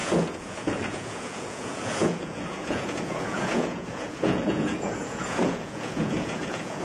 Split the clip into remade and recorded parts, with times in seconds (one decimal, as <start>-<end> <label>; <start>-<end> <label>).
0.0-6.8 remade